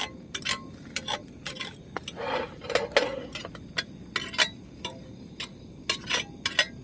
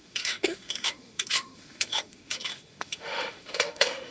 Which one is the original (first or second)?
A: first